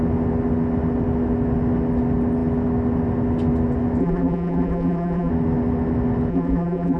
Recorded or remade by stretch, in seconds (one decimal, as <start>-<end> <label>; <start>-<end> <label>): 0.0-4.0 recorded; 4.0-5.3 remade; 5.3-6.3 recorded; 6.3-7.0 remade